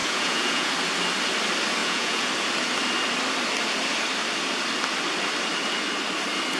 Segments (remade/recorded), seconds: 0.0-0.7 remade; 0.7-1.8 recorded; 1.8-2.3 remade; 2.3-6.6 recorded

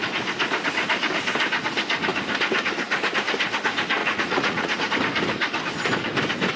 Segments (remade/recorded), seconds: 0.0-4.0 recorded; 4.0-4.9 remade; 4.9-6.6 recorded

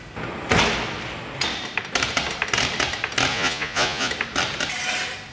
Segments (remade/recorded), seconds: 0.0-3.3 recorded; 3.3-4.1 remade; 4.1-5.3 recorded